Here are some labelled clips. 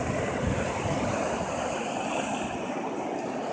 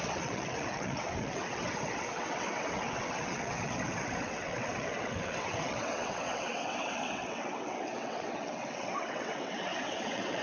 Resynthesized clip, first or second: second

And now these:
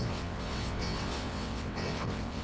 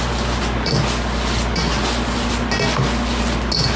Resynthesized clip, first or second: first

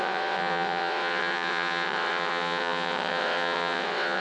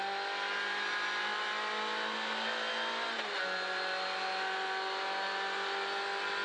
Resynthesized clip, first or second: first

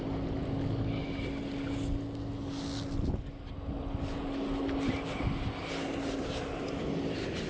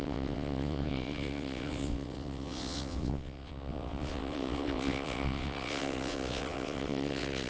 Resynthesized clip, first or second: second